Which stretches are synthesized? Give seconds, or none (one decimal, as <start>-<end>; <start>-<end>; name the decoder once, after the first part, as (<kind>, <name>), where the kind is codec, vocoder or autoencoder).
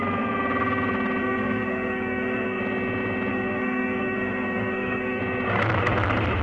1.2-2.6 (codec, SNAC); 3.3-5.2